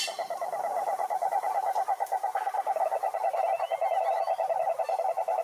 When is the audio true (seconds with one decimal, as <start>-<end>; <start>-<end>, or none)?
0.0-5.4